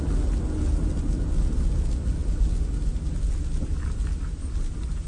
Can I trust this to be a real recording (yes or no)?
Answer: yes